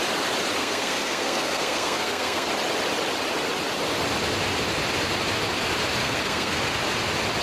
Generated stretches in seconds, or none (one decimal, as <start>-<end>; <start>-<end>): 0.6-2.5; 6.0-6.6